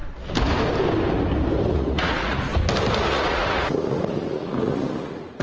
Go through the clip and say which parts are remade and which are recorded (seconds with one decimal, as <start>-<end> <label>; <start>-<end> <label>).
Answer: 0.0-1.7 recorded; 1.7-2.5 remade; 2.5-3.1 recorded; 3.1-5.4 remade